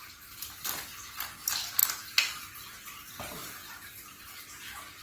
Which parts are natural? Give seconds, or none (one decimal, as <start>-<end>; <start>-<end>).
0.0-3.6; 4.2-5.0

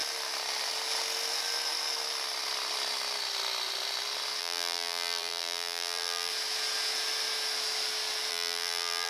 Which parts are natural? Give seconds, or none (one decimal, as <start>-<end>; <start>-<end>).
0.0-4.4; 6.3-8.3

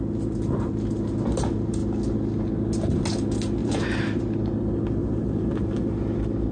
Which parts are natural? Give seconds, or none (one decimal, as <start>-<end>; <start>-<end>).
0.0-3.6; 4.2-5.0; 5.8-6.5

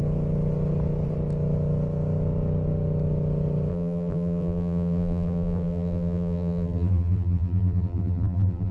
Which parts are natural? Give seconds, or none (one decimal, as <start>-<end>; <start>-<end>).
0.0-3.7

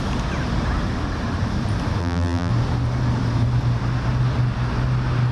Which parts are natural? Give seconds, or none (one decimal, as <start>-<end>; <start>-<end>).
0.0-2.0; 2.5-5.3

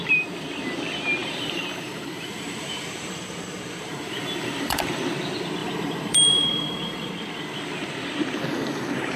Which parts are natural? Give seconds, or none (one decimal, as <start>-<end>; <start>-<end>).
0.0-1.2; 5.0-5.6; 7.1-8.5

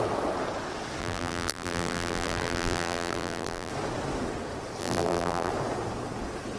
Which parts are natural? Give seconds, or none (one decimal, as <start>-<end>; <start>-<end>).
0.0-1.0; 3.7-4.8; 5.5-6.6

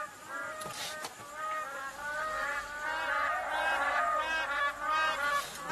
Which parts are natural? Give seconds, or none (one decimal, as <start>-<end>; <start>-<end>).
0.0-5.7